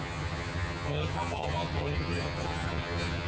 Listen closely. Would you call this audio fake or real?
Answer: fake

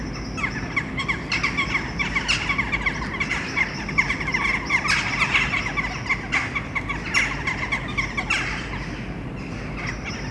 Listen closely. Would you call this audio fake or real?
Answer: real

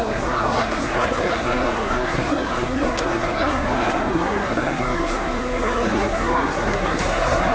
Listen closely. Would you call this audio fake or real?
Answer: fake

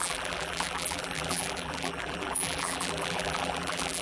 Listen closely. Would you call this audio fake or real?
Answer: fake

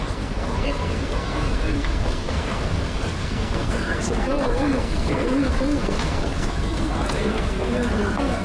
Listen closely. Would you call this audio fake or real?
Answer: fake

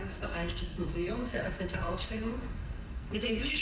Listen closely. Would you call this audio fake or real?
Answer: fake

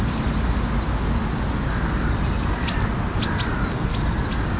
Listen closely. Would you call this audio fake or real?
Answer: real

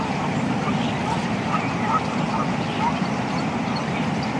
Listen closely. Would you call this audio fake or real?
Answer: real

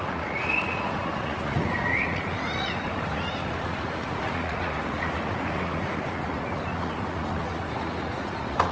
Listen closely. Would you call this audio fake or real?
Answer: fake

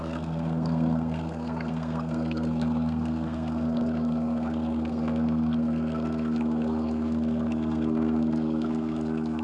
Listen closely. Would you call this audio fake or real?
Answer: fake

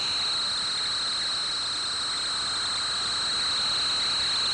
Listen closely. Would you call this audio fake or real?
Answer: real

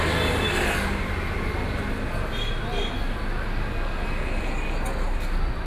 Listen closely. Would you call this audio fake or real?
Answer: real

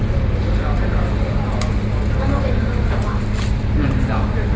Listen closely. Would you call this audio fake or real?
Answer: real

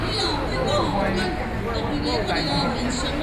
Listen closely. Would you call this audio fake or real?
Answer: real